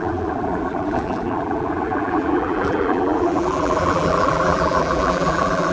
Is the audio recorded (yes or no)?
no